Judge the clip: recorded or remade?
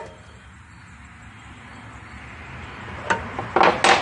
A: recorded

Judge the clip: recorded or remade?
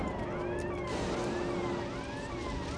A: recorded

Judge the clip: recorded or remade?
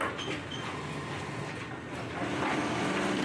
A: recorded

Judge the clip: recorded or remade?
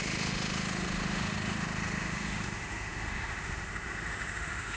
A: remade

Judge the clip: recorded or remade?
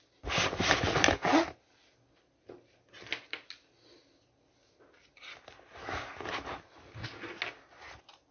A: recorded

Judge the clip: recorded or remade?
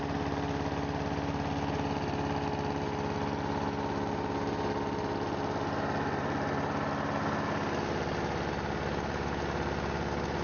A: recorded